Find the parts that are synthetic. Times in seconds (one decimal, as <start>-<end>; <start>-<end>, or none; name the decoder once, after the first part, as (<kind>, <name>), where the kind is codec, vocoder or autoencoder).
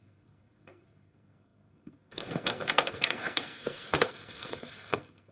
0.0-5.3 (codec, SNAC)